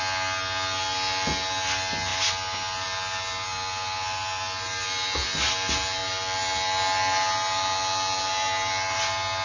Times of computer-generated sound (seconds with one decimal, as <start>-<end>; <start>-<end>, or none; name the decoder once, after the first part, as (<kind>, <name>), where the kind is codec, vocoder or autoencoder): none